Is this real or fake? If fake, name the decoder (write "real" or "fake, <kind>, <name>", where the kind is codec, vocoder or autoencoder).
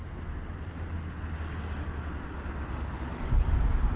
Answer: real